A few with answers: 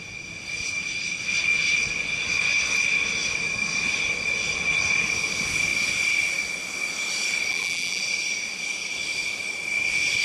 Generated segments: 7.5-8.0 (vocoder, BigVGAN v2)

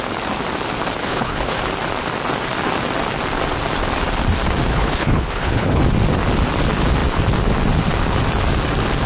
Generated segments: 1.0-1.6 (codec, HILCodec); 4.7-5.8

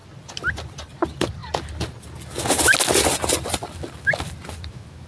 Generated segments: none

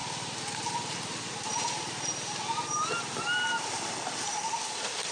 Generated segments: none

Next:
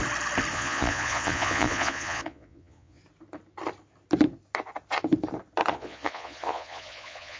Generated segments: 0.5-3.0 (vocoder, Vocos); 5.7-7.4

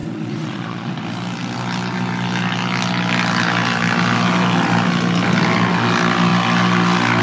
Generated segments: 0.0-0.9 (vocoder, Vocos)

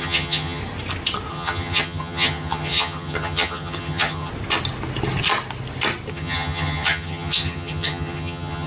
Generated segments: 0.0-0.6 (vocoder, HiFi-GAN); 1.3-4.3; 6.1-8.7

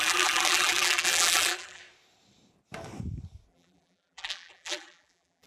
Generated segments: 0.0-1.8 (vocoder, BigVGAN v2); 3.5-5.5